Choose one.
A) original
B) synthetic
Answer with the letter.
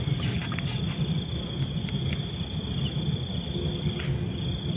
A